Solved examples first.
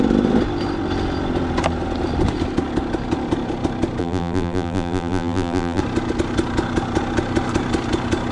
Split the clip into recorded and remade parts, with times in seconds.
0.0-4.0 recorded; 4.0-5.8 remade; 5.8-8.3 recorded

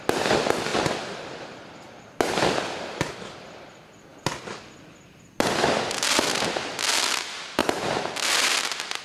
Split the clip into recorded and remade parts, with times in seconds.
0.0-0.7 recorded; 0.7-2.0 remade; 2.0-9.0 recorded